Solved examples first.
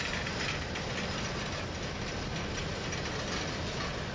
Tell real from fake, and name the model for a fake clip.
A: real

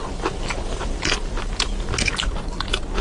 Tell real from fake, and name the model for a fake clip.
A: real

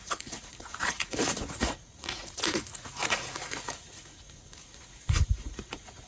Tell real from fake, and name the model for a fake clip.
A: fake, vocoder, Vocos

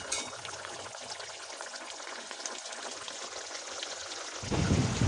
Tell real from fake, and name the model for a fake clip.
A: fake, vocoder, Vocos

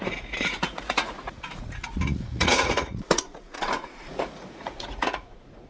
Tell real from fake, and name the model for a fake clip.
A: fake, vocoder, Vocos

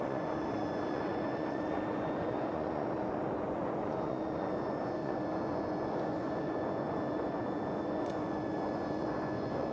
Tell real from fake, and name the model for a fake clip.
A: fake, vocoder, Vocos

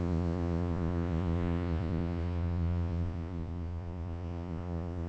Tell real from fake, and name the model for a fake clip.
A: fake, vocoder, Vocos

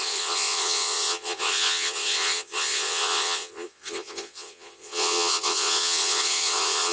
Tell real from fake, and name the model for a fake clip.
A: fake, vocoder, Vocos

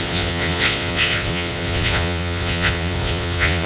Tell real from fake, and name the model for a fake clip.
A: fake, vocoder, Vocos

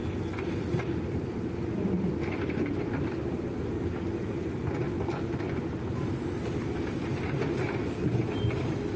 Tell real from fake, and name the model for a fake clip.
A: real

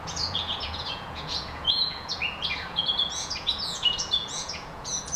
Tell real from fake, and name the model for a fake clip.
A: fake, vocoder, Vocos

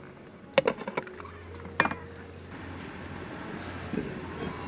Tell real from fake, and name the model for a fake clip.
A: real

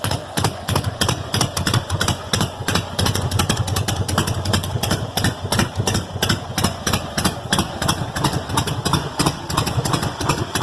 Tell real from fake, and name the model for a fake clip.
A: fake, vocoder, Vocos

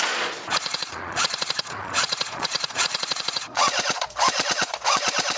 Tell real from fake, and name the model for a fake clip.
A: fake, vocoder, Vocos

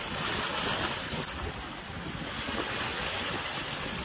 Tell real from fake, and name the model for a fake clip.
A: real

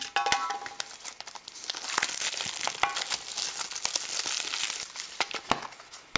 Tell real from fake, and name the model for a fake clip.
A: real